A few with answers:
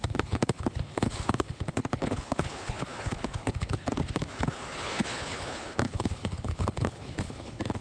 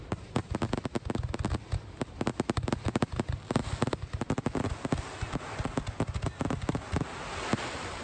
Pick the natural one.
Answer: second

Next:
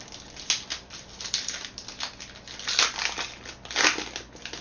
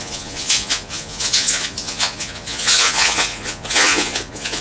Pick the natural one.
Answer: first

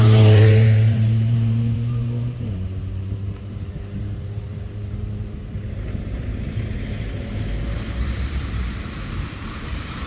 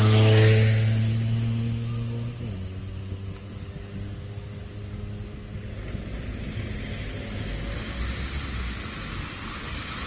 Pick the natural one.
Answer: second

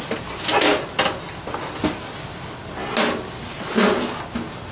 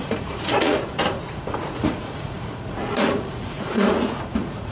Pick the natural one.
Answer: first